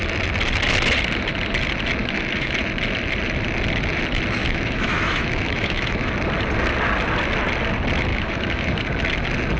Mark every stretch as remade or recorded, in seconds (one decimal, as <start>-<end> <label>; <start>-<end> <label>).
0.0-2.0 recorded; 2.0-2.6 remade; 2.6-4.4 recorded; 4.4-6.1 remade; 6.1-8.1 recorded; 8.1-8.7 remade; 8.7-9.6 recorded